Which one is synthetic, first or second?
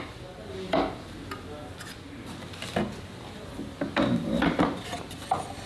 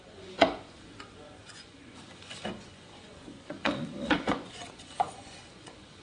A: second